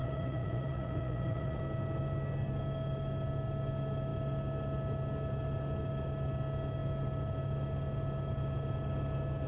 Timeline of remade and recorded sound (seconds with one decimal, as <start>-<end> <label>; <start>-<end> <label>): 0.0-1.6 remade; 1.6-9.5 recorded